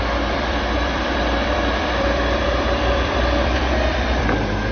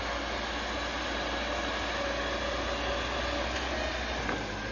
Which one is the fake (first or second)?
first